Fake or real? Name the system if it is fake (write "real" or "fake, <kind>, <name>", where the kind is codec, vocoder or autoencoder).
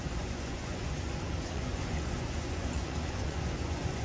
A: fake, vocoder, Vocos